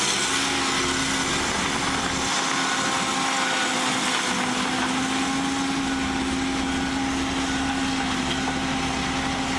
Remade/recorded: recorded